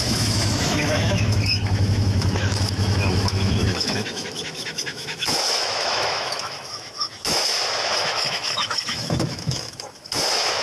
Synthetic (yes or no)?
yes